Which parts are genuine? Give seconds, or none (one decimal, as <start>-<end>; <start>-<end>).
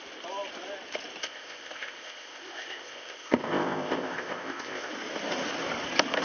0.0-1.2; 4.9-6.2